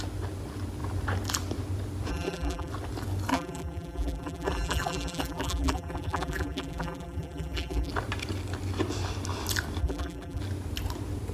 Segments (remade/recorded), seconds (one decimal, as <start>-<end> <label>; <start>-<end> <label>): 0.0-2.1 recorded; 2.1-2.7 remade; 2.7-3.3 recorded; 3.3-7.9 remade; 7.9-9.8 recorded; 9.8-10.4 remade; 10.4-11.3 recorded